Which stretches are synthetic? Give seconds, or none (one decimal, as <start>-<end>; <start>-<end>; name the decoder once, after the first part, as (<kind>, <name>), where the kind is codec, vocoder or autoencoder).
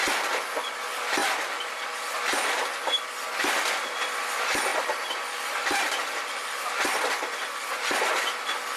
0.0-0.7 (vocoder, BigVGAN v2); 1.2-2.9; 4.7-7.2